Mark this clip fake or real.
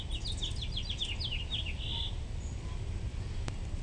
real